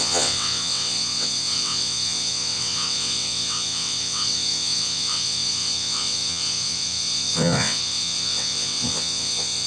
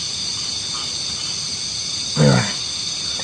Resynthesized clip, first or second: first